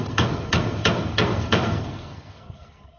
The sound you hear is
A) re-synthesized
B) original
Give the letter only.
A